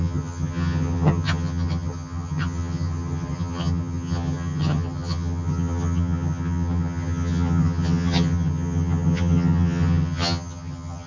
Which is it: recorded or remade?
remade